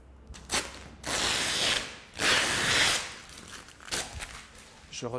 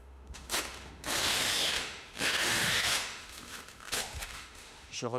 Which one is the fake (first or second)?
second